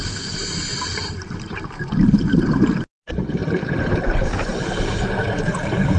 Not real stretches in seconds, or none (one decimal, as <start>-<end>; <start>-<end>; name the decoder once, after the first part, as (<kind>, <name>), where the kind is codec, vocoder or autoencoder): 0.7-1.9 (vocoder, BigVGAN v2); 3.4-4.8